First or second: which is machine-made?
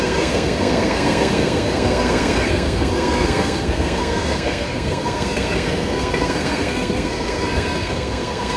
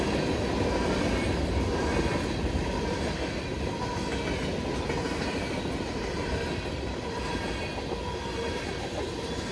first